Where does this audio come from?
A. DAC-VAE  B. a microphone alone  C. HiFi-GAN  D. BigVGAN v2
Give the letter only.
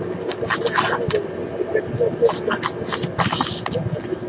B